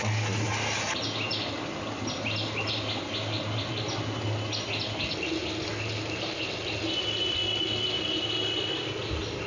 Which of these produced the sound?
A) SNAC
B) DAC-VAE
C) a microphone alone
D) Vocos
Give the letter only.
C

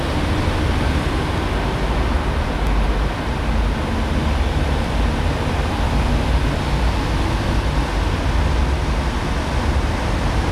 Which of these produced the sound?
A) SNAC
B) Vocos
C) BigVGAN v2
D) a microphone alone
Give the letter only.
D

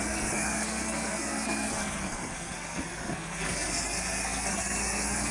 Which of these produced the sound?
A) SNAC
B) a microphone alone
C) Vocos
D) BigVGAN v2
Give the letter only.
A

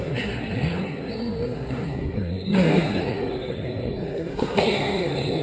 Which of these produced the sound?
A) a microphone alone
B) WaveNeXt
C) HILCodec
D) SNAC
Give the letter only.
D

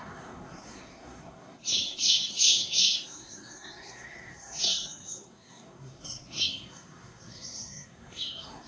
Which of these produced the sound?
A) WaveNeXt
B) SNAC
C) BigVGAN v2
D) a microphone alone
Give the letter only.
B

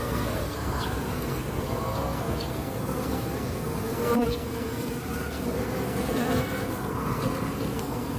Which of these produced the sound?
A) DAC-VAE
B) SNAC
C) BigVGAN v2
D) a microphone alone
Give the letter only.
B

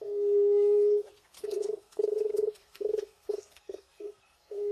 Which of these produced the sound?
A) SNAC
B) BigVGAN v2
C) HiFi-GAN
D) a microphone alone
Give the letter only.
A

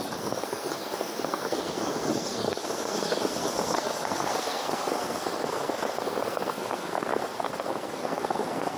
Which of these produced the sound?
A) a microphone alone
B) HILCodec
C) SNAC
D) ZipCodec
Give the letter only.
C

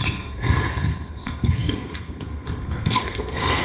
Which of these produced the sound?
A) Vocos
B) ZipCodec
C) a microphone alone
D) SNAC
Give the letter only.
D